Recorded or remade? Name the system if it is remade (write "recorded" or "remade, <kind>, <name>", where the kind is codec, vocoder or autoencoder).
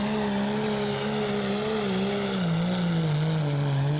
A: recorded